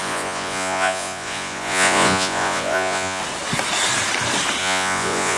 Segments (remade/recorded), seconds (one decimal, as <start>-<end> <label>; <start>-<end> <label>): 0.0-3.2 remade; 3.2-4.6 recorded; 4.6-5.4 remade